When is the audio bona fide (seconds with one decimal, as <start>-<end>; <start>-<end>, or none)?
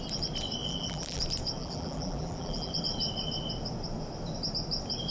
0.0-0.6; 1.2-1.6; 2.7-5.1